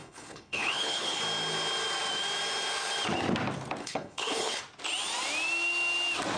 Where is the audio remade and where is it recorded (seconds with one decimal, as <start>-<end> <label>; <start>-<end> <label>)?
0.0-1.2 remade; 1.2-3.8 recorded; 3.8-4.6 remade; 4.6-6.4 recorded